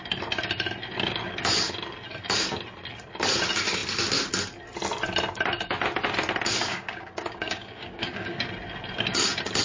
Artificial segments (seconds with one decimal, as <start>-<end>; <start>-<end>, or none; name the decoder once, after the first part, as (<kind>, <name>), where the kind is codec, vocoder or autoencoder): 6.7-8.4 (codec, DAC)